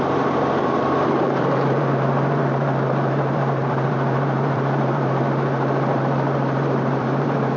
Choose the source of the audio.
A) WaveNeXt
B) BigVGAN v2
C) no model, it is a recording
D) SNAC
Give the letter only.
B